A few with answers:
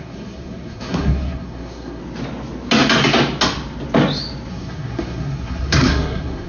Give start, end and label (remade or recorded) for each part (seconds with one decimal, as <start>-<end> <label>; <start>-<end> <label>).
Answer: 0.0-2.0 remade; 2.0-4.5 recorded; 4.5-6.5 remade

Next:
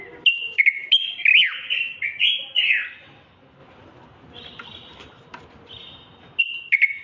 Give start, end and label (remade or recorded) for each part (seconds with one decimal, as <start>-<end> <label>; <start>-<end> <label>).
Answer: 0.0-7.0 recorded

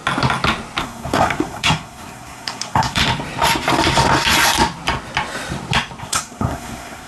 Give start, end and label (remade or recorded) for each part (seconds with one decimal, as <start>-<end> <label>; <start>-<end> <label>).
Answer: 0.0-0.8 recorded; 0.8-3.0 remade; 3.0-6.0 recorded; 6.0-7.1 remade

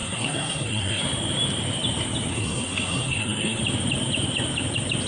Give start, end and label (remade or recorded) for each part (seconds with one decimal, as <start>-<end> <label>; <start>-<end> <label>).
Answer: 0.0-1.0 remade; 1.0-2.3 recorded; 2.3-3.6 remade; 3.6-5.1 recorded